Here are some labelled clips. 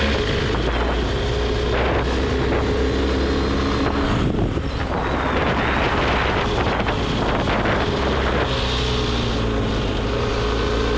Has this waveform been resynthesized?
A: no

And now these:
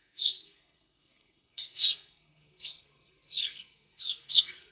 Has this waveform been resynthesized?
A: yes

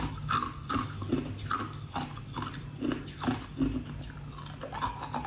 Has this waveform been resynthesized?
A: no